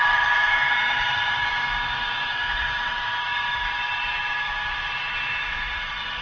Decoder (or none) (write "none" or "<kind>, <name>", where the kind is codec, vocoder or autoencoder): autoencoder, DAC-VAE